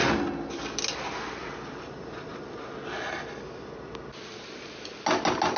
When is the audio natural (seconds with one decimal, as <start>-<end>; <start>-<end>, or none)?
0.0-5.6